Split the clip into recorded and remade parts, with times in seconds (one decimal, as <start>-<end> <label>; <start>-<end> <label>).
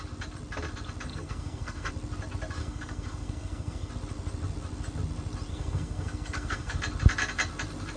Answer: 0.0-1.1 recorded; 1.1-1.9 remade; 1.9-2.6 recorded; 2.6-3.9 remade; 3.9-5.5 recorded; 5.5-6.8 remade; 6.8-8.0 recorded